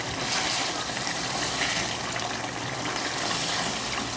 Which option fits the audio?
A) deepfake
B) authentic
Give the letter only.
B